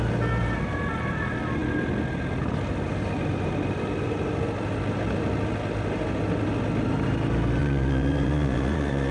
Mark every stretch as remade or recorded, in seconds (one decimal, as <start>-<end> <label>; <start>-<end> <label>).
0.0-7.6 recorded; 7.6-9.1 remade